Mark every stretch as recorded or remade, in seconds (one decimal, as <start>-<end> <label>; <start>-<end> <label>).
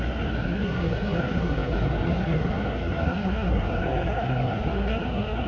0.0-5.5 remade